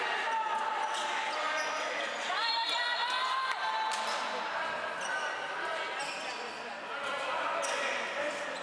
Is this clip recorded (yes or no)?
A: yes